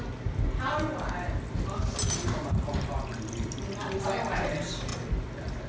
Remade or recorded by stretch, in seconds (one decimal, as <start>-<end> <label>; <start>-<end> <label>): 0.0-5.7 recorded